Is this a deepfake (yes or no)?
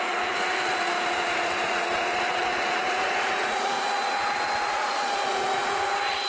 yes